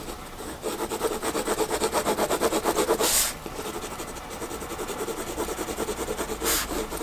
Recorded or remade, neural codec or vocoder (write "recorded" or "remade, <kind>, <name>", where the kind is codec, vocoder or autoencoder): recorded